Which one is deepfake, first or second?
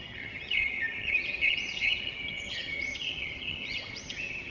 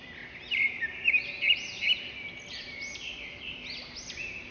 first